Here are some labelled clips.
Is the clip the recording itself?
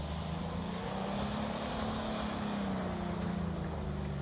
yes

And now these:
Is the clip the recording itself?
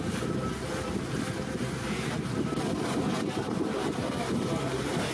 yes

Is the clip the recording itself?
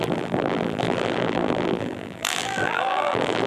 no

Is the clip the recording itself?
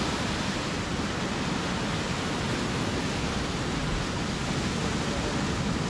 yes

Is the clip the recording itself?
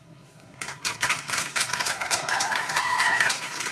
no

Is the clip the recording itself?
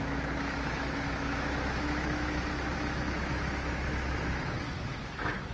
no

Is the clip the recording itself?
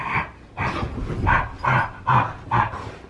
yes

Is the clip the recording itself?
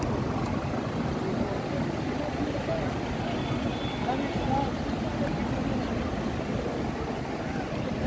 yes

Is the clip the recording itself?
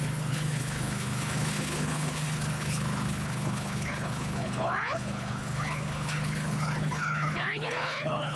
no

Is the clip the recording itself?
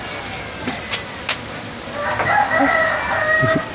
yes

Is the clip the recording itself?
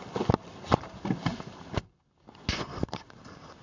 yes